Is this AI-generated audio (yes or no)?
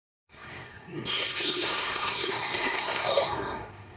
yes